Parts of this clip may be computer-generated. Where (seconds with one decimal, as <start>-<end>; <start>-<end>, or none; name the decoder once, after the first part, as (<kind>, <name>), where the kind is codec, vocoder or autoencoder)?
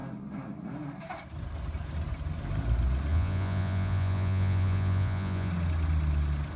3.1-5.5 (vocoder, Vocos)